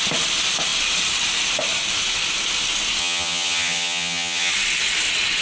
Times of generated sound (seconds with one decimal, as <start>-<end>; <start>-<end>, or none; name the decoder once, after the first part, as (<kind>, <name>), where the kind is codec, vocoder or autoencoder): 3.0-4.5 (vocoder, HiFi-GAN)